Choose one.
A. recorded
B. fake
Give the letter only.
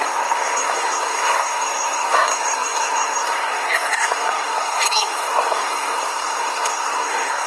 B